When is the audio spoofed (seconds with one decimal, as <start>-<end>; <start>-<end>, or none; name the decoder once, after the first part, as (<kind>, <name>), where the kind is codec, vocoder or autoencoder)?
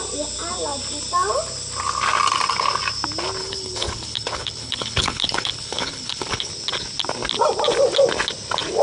3.4-6.5 (codec, HILCodec)